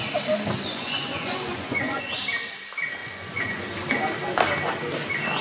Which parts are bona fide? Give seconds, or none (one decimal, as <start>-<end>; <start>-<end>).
0.0-0.7; 2.2-3.0; 3.6-5.4